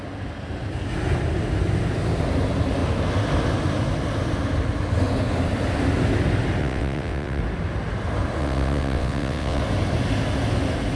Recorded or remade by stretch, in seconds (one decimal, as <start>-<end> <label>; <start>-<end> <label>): 0.0-6.6 recorded; 6.6-7.4 remade; 7.4-8.4 recorded; 8.4-9.6 remade; 9.6-11.0 recorded